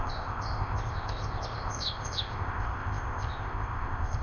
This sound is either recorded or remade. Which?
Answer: remade